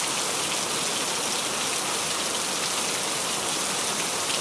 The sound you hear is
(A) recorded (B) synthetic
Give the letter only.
A